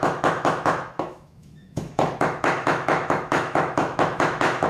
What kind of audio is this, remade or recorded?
remade